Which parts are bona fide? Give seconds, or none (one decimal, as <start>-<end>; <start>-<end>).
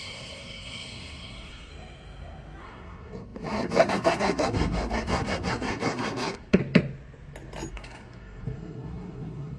1.7-2.6; 6.6-7.7